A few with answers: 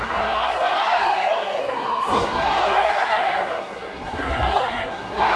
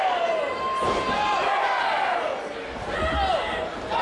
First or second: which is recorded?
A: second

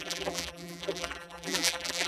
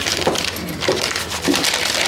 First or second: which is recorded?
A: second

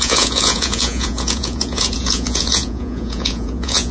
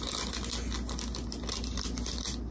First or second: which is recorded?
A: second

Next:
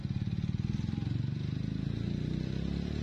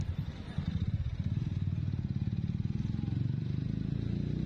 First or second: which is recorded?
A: first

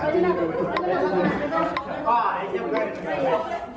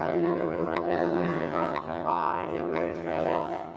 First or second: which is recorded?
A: first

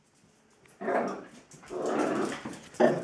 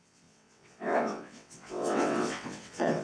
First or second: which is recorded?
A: first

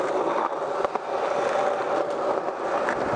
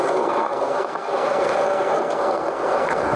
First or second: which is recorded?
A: first